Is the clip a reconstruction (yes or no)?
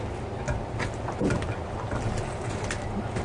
no